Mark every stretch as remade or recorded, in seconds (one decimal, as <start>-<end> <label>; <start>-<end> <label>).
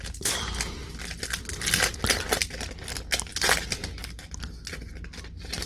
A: 0.0-5.7 recorded